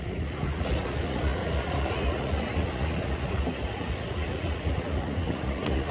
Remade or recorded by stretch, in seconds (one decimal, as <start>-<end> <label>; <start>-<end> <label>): 0.0-5.9 remade